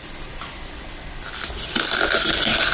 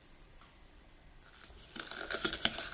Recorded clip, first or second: first